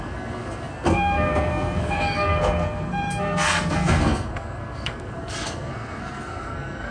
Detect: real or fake fake